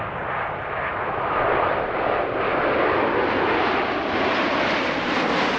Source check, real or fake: real